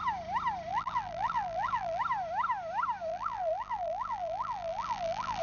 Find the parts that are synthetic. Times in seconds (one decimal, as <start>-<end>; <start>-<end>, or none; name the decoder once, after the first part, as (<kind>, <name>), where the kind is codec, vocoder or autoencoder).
0.7-2.0 (vocoder, BigVGAN v2); 3.1-5.4